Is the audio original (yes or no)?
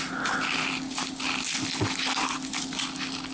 yes